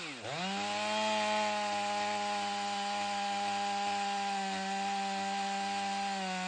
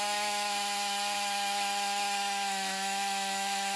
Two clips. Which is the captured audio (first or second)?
first